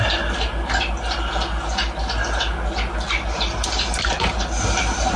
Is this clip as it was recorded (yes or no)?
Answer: yes